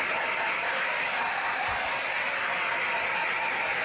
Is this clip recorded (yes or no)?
yes